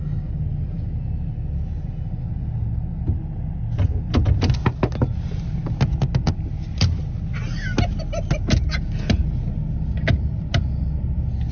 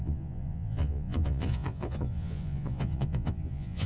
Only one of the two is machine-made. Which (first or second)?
second